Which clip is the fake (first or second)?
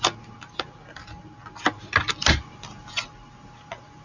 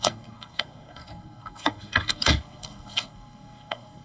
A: second